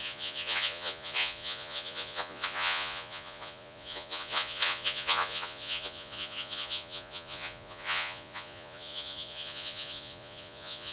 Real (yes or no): no